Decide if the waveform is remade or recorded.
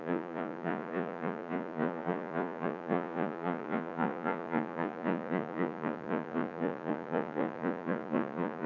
remade